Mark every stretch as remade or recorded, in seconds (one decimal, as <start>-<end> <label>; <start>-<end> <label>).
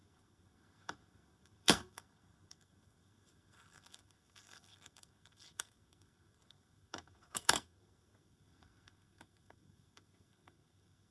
0.0-11.1 remade